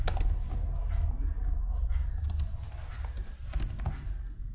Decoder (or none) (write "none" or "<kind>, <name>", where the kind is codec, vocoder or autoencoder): none